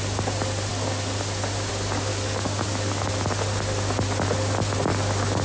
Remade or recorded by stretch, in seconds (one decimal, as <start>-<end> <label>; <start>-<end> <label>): 0.0-2.1 recorded; 2.1-3.1 remade; 3.1-5.4 recorded

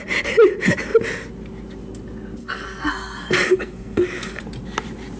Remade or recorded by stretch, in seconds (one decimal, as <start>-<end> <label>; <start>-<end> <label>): 0.0-2.4 recorded; 2.4-4.4 remade; 4.4-5.2 recorded

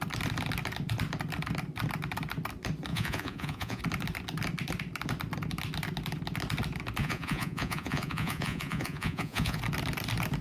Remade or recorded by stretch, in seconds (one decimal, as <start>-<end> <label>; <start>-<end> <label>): 0.0-2.9 recorded; 2.9-3.8 remade; 3.8-7.0 recorded; 7.0-9.6 remade; 9.6-10.4 recorded